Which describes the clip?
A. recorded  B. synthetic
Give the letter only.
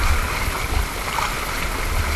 A